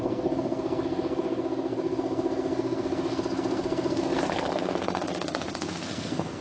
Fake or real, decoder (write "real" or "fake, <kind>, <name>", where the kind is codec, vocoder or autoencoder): fake, codec, SNAC